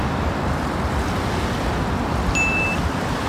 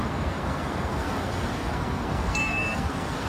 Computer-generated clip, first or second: second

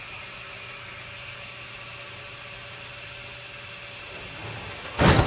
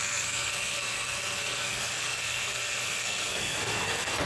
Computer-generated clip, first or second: second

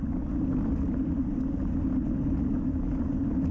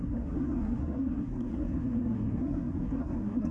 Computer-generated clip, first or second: second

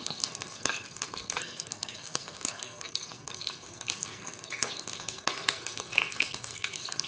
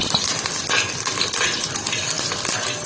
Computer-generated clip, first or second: first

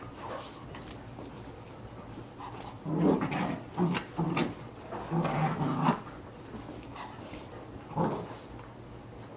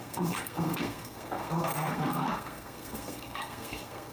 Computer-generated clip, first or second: second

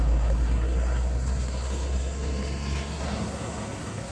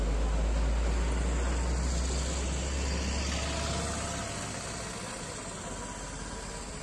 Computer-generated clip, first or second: first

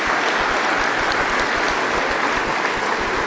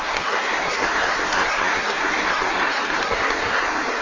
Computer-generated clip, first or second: second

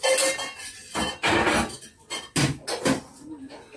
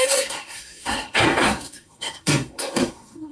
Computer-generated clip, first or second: second